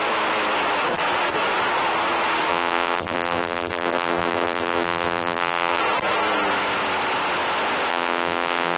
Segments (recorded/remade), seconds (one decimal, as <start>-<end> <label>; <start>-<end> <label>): 0.0-2.5 recorded; 2.5-5.8 remade; 5.8-7.9 recorded; 7.9-8.8 remade